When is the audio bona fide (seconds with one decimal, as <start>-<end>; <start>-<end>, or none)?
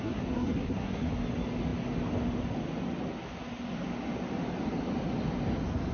1.1-5.9